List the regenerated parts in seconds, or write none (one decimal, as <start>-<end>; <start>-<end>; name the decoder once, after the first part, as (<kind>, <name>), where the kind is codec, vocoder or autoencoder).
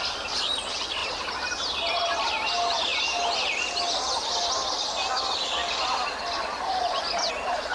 none